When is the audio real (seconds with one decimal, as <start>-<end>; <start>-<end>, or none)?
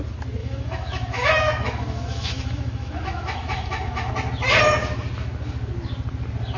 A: 0.0-0.4; 4.1-6.6